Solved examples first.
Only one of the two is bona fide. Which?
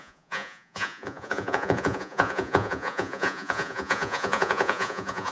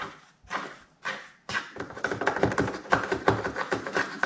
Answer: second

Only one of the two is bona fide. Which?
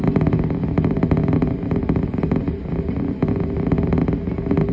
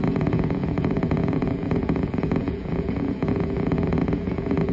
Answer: first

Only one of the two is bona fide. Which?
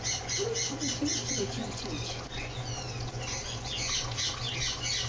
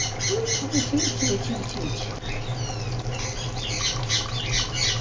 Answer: second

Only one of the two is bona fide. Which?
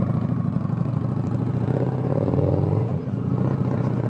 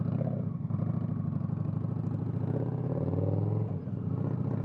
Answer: second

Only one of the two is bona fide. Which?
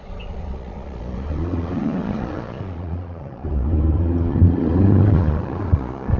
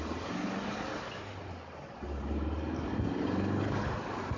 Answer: second